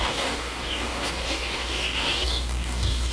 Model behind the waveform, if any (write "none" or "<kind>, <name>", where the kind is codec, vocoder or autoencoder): codec, DAC